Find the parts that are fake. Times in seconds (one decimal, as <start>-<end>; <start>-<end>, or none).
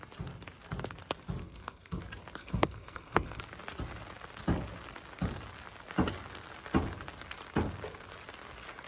1.4-2.0; 2.4-3.4